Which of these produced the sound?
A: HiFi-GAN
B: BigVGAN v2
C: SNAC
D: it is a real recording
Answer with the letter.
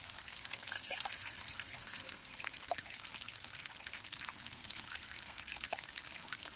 C